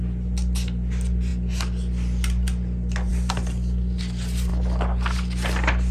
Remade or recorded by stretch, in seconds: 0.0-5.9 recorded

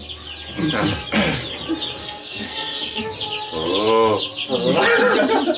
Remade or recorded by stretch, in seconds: 0.0-2.0 recorded; 2.0-3.0 remade; 3.0-5.6 recorded

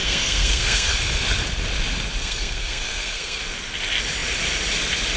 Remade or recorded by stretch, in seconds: 0.0-0.9 remade; 0.9-2.2 recorded; 2.2-3.4 remade; 3.4-5.2 recorded